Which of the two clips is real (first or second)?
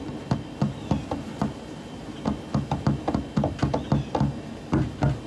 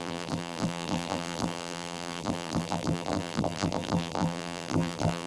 first